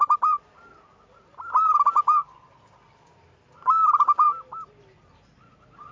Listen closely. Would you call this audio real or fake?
fake